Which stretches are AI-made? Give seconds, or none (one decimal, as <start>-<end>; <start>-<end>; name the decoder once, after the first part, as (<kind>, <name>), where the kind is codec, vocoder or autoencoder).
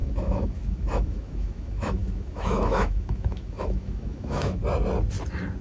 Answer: 0.0-4.6 (autoencoder, DAC-VAE)